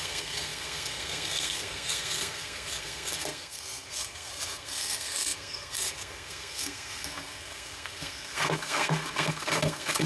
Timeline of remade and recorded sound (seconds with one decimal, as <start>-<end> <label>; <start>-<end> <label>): 0.0-10.1 remade